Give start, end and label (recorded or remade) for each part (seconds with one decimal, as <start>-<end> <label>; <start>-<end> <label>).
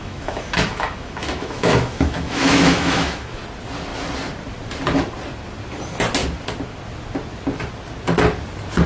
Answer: 0.0-3.4 remade; 3.4-8.9 recorded